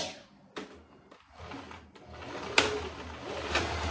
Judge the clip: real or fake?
real